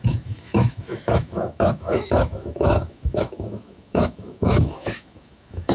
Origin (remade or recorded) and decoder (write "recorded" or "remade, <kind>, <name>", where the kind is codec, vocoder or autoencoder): remade, autoencoder, DAC-VAE